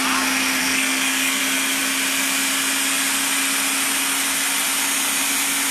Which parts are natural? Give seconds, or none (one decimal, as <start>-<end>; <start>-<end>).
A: 0.0-0.6; 1.4-5.7